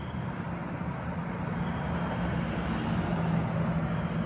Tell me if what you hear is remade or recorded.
recorded